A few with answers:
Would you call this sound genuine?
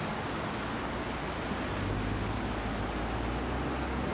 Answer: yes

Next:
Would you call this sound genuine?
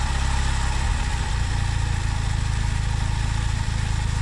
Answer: yes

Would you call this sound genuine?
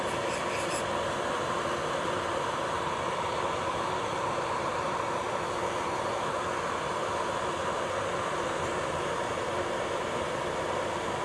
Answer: yes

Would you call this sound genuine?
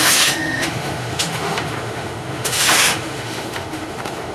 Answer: no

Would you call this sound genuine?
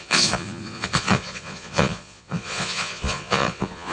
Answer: no